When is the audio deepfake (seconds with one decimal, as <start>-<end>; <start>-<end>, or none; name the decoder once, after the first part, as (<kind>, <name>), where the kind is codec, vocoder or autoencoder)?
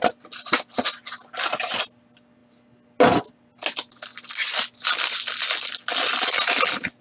none